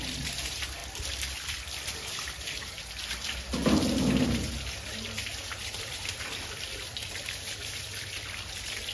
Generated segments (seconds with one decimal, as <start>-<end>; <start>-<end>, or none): 0.8-2.8; 5.2-8.5